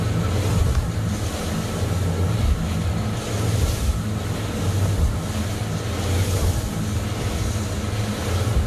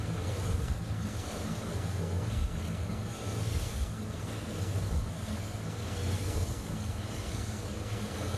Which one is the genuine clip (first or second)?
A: first